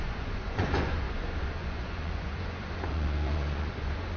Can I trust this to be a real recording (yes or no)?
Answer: no